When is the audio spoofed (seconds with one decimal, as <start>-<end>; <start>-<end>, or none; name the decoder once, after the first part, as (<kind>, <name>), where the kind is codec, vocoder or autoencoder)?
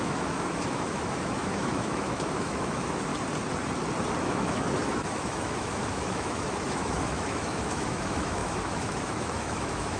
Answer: 0.0-3.1 (autoencoder, DAC-VAE); 4.2-10.0